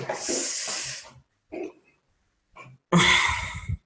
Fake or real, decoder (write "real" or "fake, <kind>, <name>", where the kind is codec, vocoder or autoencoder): real